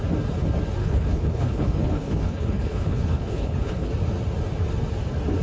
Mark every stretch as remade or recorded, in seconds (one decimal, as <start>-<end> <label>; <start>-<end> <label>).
0.0-0.8 recorded; 0.8-3.9 remade; 3.9-5.4 recorded